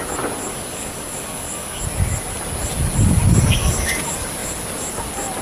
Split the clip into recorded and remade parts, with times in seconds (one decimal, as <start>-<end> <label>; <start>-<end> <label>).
0.0-0.5 recorded; 0.5-1.8 remade; 1.8-5.4 recorded